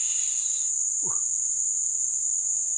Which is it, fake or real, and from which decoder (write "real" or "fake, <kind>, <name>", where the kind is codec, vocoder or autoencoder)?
real